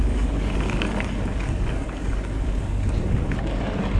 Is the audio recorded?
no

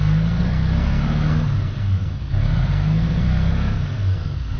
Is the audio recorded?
no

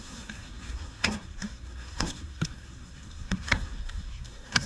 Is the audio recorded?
no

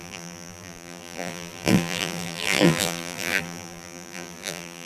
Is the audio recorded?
no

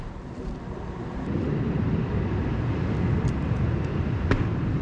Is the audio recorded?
yes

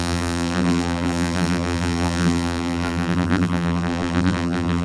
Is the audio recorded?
no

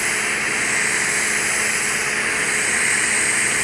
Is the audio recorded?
yes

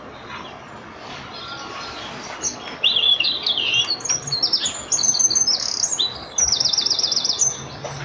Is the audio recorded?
yes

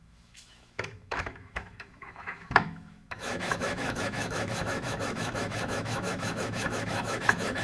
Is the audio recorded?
no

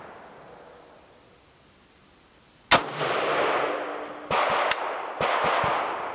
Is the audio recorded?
yes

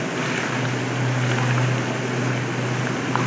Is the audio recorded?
yes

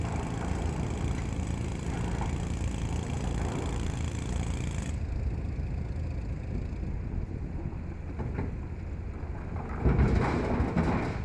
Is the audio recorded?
yes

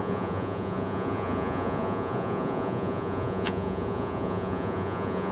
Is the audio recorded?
no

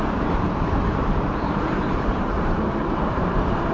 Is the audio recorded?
no